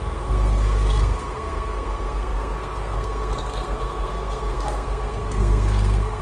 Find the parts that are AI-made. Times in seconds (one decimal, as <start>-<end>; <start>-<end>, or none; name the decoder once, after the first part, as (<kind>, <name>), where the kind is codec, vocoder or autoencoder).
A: 0.0-6.2 (codec, SNAC)